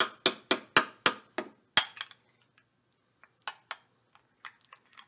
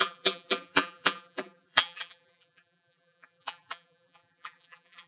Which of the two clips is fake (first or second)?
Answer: second